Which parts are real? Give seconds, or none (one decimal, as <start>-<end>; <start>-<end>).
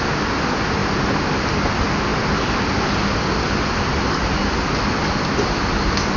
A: 0.0-6.2